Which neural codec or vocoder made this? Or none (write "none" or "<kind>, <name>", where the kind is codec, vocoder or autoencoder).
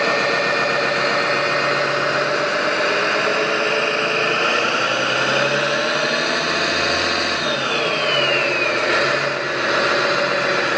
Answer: none